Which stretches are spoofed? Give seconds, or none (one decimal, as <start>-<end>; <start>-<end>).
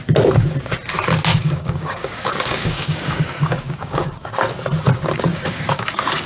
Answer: 1.3-4.3; 5.3-6.3